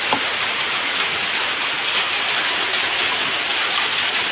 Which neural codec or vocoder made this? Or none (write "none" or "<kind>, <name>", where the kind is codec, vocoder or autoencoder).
none